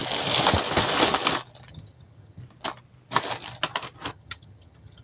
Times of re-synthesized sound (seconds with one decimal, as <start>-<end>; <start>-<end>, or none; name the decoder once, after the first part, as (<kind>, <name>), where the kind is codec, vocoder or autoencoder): 1.7-2.4 (vocoder, HiFi-GAN); 4.1-5.0